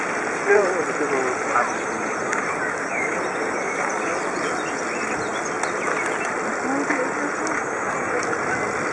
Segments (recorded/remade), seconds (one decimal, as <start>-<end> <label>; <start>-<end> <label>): 0.0-8.9 recorded